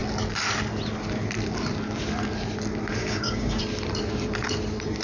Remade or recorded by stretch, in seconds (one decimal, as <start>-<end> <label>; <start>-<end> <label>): 0.0-3.0 recorded; 3.0-3.6 remade; 3.6-5.0 recorded